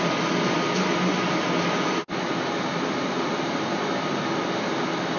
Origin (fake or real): real